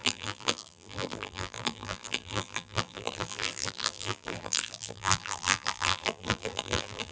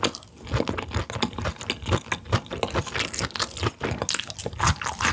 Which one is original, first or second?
second